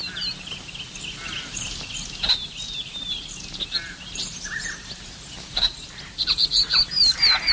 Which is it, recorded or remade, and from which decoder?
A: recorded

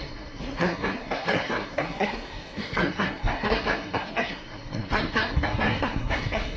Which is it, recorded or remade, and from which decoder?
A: remade, codec, SNAC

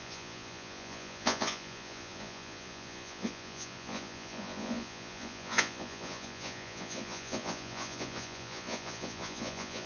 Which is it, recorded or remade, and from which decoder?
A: remade, vocoder, Vocos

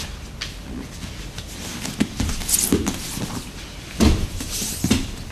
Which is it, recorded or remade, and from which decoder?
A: recorded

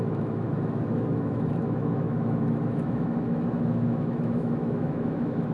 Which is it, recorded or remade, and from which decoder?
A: remade, autoencoder, DAC-VAE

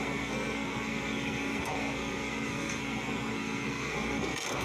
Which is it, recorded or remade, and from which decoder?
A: remade, codec, SNAC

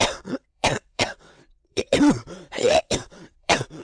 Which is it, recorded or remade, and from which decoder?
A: remade, vocoder, WaveNeXt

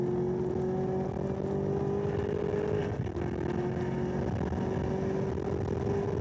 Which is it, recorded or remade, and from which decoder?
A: recorded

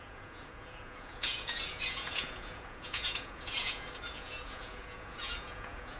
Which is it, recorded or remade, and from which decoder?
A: remade, vocoder, Vocos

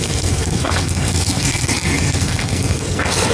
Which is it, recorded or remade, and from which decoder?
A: remade, codec, SNAC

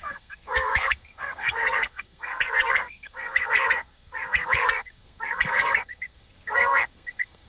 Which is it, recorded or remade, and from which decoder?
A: remade, codec, SNAC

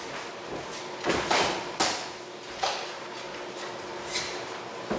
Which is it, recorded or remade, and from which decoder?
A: recorded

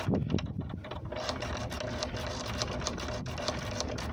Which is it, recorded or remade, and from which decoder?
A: recorded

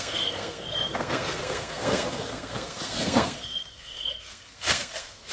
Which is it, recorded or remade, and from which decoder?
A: remade, codec, SNAC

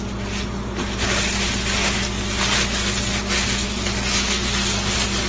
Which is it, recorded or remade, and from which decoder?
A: recorded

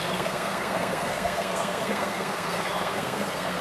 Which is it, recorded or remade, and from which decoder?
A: remade, codec, SNAC